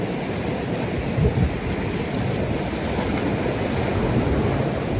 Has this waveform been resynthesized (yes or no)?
no